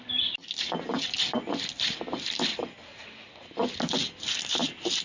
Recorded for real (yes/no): yes